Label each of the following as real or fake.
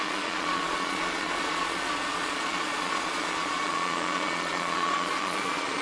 fake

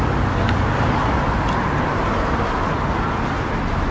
real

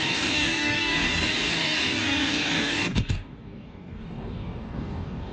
fake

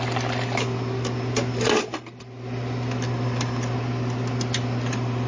real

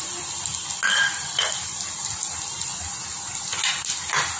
real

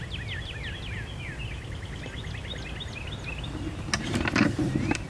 real